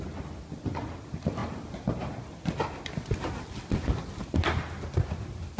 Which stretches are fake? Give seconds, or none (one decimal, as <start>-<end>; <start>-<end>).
1.4-2.1